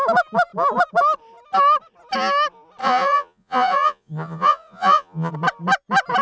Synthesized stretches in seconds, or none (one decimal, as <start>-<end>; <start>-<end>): 2.8-5.3